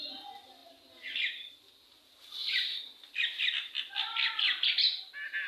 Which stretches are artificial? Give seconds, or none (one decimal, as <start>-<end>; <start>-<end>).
0.6-2.0; 2.4-4.8